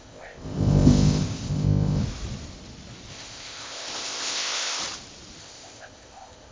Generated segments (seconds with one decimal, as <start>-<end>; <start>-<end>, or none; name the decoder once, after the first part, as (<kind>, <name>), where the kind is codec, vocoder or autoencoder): 0.0-2.0 (codec, ZipCodec); 3.1-4.8; 5.4-6.5